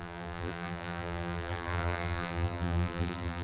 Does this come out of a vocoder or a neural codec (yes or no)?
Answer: yes